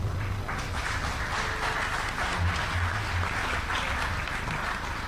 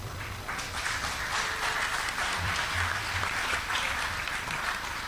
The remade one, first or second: second